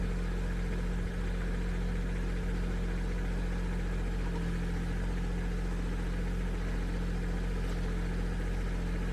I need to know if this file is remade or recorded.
recorded